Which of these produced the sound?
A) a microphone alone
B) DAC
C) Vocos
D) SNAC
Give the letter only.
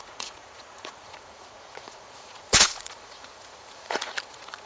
C